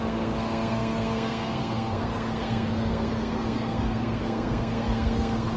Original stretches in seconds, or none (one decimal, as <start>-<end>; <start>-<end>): none